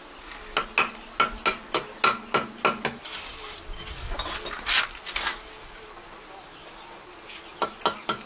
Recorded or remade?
recorded